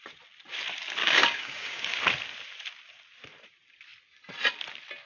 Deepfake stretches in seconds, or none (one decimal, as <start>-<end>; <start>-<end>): 1.0-2.0

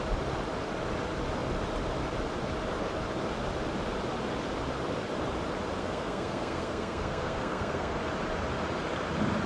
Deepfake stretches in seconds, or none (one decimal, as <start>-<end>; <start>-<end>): 5.8-8.0

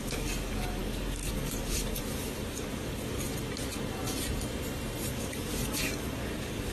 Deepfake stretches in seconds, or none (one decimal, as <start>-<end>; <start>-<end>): 0.0-3.3; 5.1-6.7

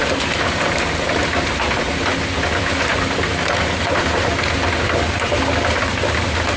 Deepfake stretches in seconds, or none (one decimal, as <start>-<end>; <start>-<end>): 0.0-2.0; 2.9-4.2